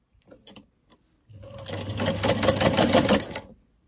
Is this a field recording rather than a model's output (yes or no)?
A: yes